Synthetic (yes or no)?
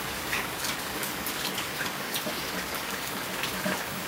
yes